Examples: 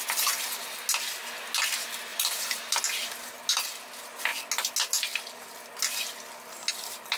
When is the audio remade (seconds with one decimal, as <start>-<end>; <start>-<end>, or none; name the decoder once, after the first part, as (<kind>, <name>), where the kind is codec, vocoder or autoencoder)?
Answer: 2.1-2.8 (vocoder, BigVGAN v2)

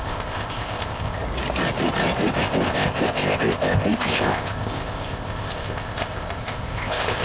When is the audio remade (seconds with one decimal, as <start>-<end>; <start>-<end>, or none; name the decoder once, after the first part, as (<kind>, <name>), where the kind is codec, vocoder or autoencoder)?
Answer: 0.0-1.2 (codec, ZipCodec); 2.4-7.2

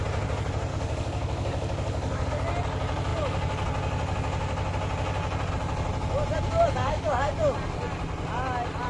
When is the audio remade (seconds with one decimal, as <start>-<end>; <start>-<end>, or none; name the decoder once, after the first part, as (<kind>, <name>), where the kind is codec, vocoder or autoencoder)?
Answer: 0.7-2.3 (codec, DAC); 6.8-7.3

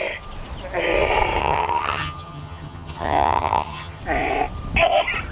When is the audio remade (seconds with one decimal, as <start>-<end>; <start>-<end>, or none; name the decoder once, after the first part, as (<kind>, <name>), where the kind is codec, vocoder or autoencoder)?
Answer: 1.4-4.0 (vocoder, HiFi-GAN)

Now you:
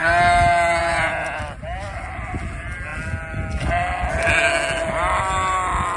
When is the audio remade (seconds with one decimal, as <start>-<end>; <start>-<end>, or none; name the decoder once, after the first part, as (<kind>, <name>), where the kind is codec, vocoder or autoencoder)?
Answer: 0.8-1.4 (vocoder, Vocos)

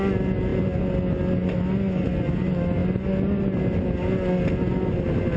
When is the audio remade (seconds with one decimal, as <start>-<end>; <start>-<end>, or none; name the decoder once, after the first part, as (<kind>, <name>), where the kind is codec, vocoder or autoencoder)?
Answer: none

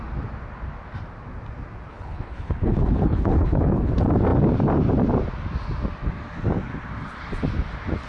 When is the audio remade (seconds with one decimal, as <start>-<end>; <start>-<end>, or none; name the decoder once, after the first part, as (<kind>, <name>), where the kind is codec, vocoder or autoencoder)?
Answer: 1.9-3.9 (codec, HILCodec)

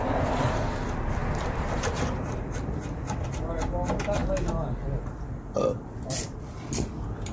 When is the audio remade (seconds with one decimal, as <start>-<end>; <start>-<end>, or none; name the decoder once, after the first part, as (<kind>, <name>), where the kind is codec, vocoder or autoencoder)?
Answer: 0.0-4.2 (vocoder, BigVGAN v2); 5.6-7.3